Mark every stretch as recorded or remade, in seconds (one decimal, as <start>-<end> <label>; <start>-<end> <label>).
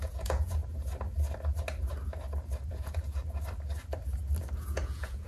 0.0-0.6 remade; 0.6-2.7 recorded; 2.7-3.2 remade; 3.2-4.5 recorded; 4.5-5.3 remade